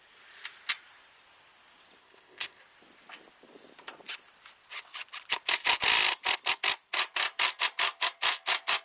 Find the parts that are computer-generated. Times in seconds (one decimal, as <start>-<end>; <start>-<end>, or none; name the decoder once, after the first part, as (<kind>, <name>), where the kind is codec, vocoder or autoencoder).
2.0-2.6 (codec, ZipCodec)